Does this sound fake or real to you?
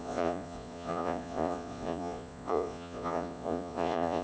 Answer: fake